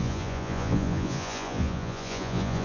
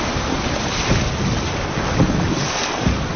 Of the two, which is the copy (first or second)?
first